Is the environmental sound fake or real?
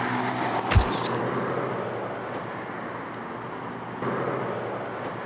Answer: real